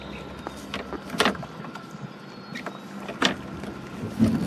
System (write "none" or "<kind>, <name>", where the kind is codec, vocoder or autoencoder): none